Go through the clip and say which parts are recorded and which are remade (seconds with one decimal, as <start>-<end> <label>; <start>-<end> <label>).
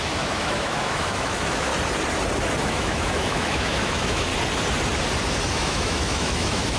0.0-1.7 remade; 1.7-2.6 recorded; 2.6-4.3 remade; 4.3-5.5 recorded; 5.5-6.8 remade